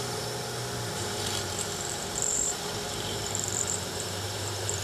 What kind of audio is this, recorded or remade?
remade